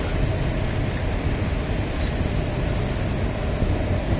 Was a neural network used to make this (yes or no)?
no